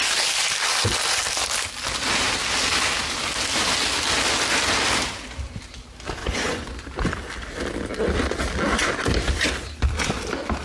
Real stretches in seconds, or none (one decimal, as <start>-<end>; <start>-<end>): 0.0-6.2; 6.8-10.6